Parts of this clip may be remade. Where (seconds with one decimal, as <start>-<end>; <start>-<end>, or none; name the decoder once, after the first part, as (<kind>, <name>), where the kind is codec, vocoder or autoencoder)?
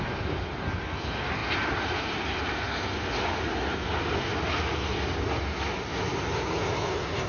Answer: none